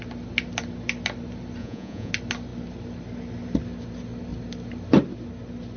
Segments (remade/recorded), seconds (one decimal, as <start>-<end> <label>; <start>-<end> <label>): 0.0-1.6 recorded; 1.6-2.1 remade; 2.1-5.8 recorded